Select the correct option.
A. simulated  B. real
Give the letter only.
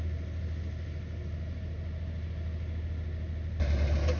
B